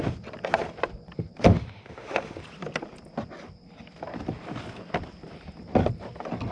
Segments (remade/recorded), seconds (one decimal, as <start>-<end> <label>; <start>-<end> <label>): 0.0-1.5 recorded; 1.5-2.4 remade; 2.4-6.5 recorded